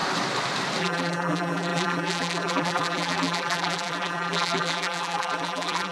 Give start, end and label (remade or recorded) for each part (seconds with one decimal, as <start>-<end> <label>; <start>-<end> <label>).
0.0-0.8 recorded; 0.8-5.9 remade